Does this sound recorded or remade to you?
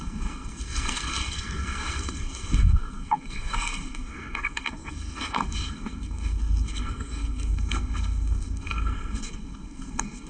remade